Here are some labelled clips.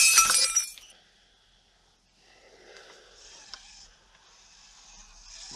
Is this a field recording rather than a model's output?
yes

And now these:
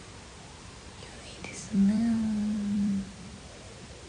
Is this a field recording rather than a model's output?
no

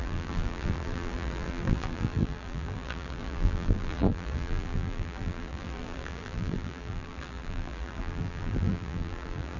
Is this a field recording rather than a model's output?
no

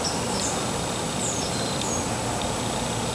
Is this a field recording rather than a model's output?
yes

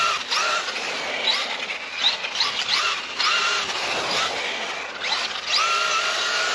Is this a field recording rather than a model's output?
yes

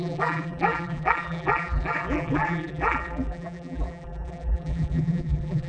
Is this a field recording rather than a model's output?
no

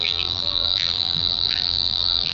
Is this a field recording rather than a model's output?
no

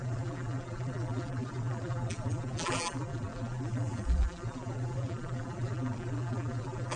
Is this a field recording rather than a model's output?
no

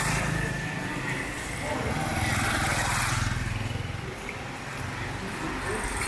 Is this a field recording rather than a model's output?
yes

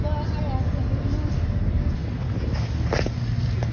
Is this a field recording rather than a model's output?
yes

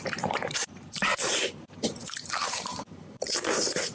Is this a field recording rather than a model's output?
no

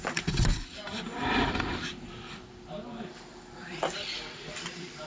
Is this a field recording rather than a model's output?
no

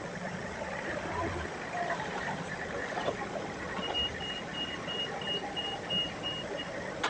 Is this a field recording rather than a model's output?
yes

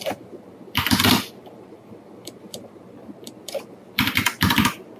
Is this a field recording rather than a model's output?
no